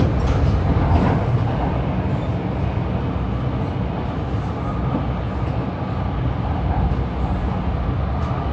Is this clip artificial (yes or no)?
no